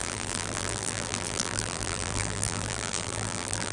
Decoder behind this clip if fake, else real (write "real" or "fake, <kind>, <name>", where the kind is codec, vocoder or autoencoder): fake, vocoder, BigVGAN v2